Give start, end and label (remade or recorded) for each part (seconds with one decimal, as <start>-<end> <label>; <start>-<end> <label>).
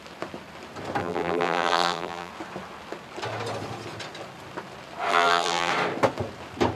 0.0-1.0 recorded; 1.0-2.3 remade; 2.3-5.1 recorded; 5.1-5.7 remade; 5.7-6.8 recorded